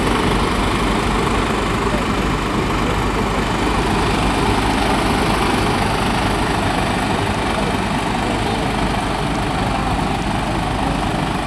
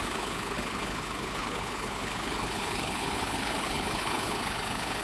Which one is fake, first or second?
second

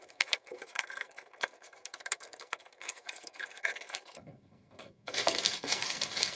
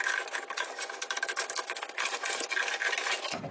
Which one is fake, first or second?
first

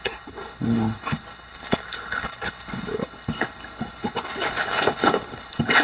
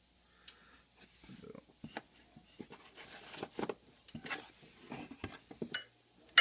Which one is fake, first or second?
first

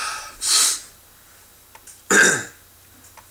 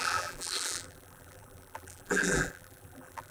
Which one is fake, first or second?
second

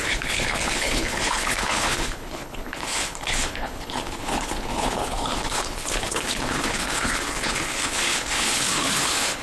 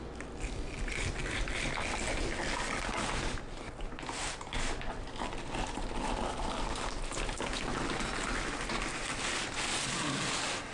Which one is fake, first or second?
first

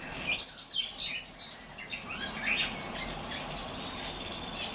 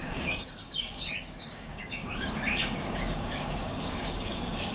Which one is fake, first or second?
second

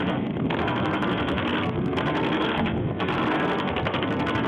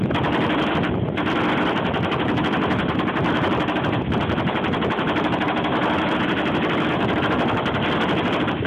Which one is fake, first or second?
first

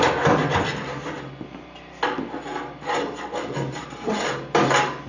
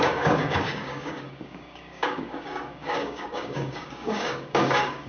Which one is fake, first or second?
second